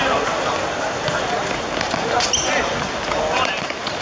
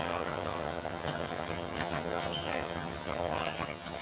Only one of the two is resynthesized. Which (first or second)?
second